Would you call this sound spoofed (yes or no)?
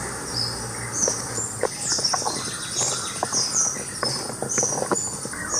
no